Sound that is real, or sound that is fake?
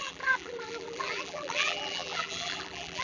fake